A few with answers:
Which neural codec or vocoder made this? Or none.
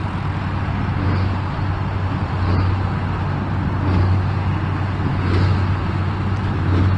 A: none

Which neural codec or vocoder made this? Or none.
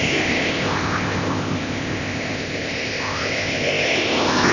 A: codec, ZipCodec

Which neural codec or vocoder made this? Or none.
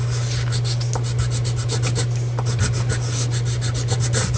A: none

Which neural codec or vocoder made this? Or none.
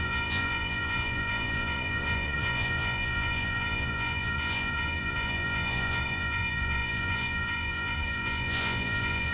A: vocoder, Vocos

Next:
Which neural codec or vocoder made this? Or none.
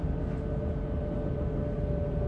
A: none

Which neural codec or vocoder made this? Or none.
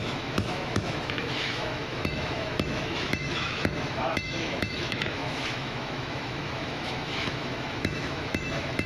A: autoencoder, DAC-VAE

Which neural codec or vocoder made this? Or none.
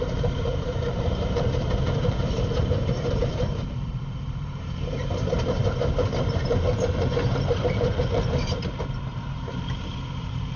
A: vocoder, BigVGAN v2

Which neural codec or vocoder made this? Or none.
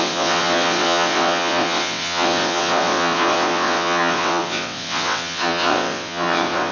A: vocoder, WaveNeXt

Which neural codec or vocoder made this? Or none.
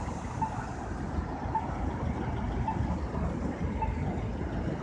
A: none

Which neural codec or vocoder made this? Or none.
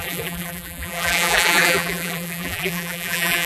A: vocoder, BigVGAN v2